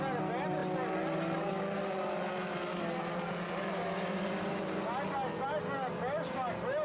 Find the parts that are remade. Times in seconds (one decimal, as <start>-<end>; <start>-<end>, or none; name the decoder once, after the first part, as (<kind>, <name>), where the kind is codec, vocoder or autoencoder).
none